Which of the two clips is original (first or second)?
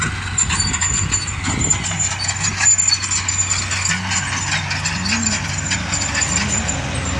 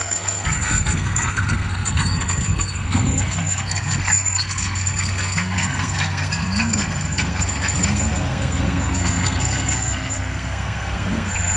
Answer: first